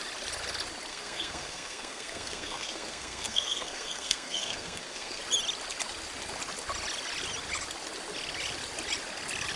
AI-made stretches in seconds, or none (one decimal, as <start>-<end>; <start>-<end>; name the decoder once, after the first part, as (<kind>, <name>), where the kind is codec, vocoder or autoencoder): 0.9-5.2 (codec, SNAC)